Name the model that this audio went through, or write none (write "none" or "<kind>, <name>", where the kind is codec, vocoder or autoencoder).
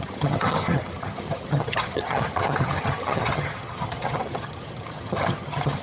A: vocoder, HiFi-GAN